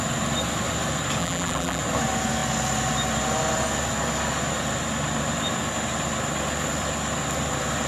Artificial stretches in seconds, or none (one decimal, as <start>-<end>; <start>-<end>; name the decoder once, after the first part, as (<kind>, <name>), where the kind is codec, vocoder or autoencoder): 1.2-1.8 (vocoder, BigVGAN v2)